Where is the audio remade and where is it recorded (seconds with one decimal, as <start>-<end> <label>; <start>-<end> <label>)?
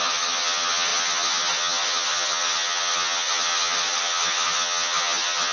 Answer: 0.0-5.5 remade